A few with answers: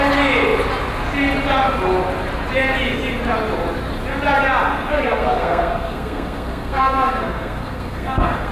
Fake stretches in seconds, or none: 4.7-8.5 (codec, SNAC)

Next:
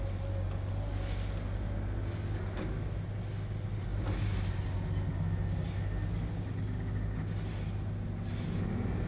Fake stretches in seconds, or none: none

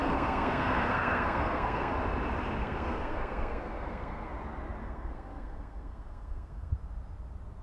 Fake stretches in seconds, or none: 0.0-1.9 (codec, SNAC); 2.6-4.3; 4.8-6.7

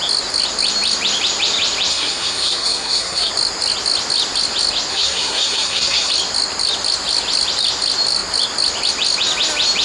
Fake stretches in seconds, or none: 1.9-3.3 (codec, SNAC); 4.9-6.1